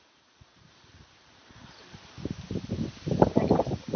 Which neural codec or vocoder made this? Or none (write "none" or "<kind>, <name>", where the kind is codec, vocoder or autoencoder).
vocoder, BigVGAN v2